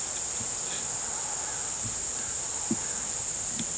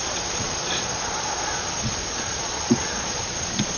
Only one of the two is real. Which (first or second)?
first